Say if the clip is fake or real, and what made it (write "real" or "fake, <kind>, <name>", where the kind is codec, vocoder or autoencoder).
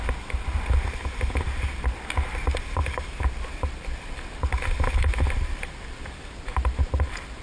real